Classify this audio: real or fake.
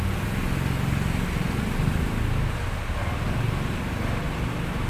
real